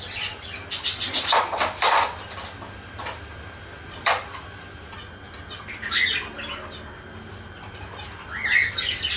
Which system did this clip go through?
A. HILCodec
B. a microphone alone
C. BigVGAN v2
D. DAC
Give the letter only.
B